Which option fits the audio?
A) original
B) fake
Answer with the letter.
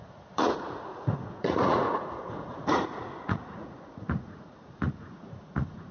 B